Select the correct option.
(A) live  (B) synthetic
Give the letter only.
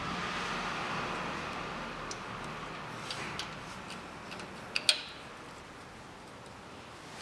A